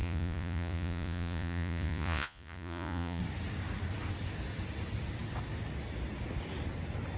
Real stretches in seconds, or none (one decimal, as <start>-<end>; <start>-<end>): 3.2-7.2